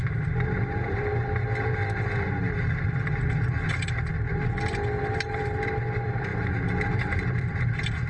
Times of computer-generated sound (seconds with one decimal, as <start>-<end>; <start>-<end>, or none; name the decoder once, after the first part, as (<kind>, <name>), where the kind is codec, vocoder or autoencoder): 0.0-1.4 (vocoder, BigVGAN v2); 3.7-4.5; 5.0-8.1